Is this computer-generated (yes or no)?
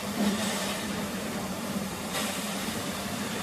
yes